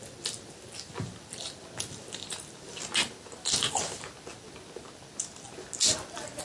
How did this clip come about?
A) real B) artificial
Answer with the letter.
A